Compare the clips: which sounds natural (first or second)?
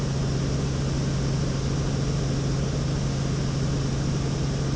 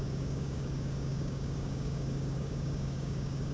first